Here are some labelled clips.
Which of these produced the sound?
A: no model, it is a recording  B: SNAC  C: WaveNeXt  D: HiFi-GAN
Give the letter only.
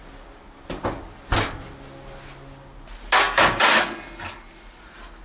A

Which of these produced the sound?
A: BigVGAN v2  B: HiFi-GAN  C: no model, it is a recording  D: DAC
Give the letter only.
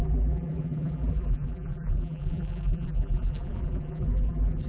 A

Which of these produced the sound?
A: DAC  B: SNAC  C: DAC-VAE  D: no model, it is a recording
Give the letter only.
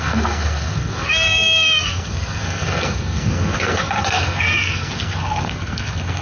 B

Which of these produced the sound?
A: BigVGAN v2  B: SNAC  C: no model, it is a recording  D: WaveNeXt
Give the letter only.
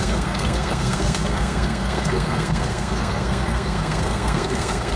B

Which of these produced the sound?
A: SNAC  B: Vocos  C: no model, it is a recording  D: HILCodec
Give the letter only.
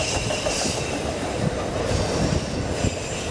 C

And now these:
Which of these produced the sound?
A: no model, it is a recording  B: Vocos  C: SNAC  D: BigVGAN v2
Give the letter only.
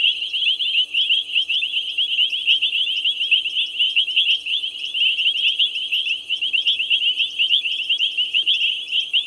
A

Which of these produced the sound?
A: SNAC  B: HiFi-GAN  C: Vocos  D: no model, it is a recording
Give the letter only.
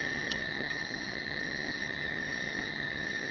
B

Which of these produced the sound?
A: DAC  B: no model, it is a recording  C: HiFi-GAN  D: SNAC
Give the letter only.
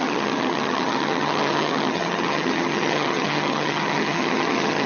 C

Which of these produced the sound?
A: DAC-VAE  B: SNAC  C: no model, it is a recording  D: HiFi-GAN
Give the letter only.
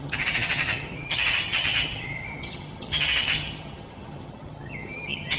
D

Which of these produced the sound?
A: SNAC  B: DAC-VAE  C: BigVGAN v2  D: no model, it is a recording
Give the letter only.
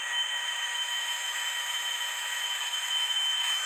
B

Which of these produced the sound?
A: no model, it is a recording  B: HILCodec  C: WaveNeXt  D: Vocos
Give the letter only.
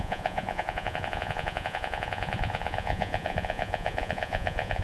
D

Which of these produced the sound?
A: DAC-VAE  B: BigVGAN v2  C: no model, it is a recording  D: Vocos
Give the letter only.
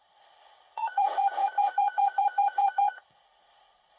D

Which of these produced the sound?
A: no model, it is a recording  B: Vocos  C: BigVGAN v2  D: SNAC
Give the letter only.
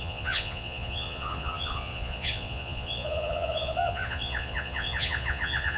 B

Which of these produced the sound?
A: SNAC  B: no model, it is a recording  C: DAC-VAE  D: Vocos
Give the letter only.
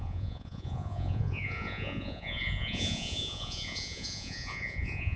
D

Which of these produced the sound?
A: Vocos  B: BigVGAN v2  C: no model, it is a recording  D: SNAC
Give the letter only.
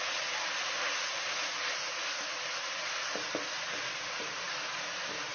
C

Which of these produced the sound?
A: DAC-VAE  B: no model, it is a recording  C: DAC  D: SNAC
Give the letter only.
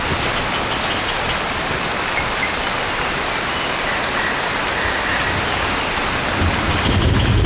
B